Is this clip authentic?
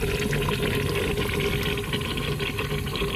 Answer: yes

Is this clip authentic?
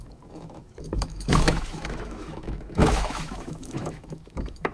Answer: no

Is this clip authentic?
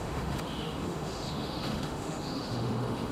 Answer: no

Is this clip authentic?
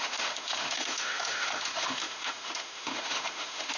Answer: no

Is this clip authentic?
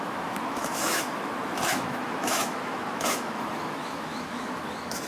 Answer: no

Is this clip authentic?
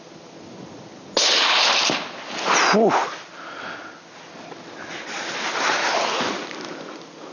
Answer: yes